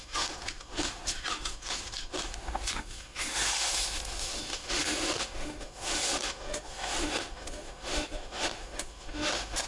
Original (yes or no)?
no